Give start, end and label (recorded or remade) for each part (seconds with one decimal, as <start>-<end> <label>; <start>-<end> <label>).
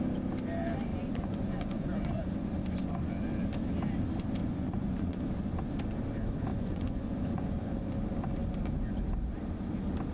0.0-0.9 recorded; 0.9-2.5 remade; 2.5-4.4 recorded; 4.4-5.2 remade; 5.2-6.5 recorded; 6.5-7.7 remade; 7.7-10.1 recorded